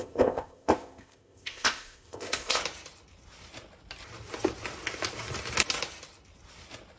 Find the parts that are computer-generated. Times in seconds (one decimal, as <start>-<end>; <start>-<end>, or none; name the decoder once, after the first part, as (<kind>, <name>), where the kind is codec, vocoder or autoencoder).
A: 0.0-2.6 (codec, ZipCodec)